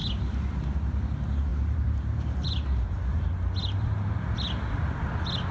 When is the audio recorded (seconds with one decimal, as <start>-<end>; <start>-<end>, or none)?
0.0-1.5; 2.9-3.6; 4.7-5.5